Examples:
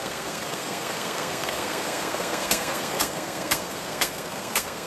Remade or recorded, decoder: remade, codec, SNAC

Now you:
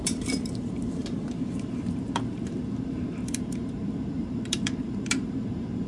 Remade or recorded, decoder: remade, vocoder, BigVGAN v2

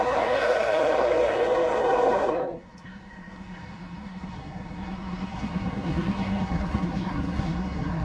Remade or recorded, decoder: remade, codec, SNAC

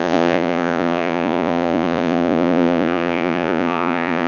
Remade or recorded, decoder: remade, vocoder, Vocos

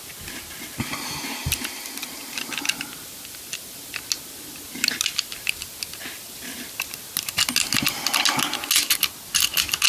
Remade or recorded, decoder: recorded